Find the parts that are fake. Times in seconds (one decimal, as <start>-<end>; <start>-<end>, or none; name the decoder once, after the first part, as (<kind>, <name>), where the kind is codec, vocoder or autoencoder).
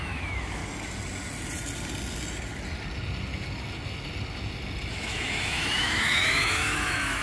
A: 0.0-0.6 (autoencoder, DAC-VAE); 4.9-7.2